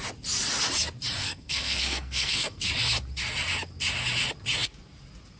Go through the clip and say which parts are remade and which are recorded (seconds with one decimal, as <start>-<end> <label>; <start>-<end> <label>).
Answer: 0.0-1.2 recorded; 1.2-2.7 remade; 2.7-5.4 recorded